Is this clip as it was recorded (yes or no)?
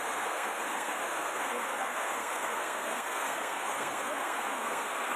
no